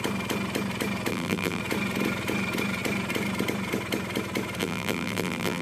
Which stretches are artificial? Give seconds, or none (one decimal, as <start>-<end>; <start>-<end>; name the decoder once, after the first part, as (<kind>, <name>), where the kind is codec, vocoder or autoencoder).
1.1-1.6 (vocoder, BigVGAN v2); 4.6-5.6